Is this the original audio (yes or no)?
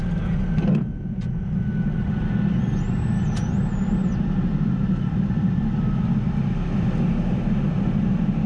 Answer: yes